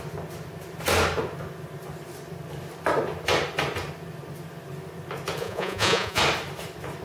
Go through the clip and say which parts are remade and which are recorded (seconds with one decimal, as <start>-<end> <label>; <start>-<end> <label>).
0.0-5.4 recorded; 5.4-6.2 remade; 6.2-7.0 recorded